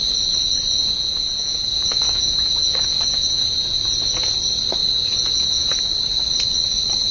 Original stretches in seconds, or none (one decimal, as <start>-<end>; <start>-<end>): 0.0-0.8; 3.8-4.8; 5.8-7.1